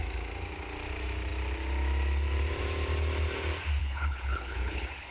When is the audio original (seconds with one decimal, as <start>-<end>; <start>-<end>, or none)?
0.0-3.8